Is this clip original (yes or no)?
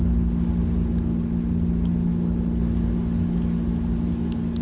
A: yes